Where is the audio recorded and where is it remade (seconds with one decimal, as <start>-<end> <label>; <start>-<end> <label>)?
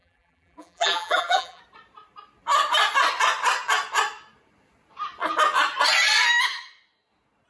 0.0-1.6 remade; 1.6-7.5 recorded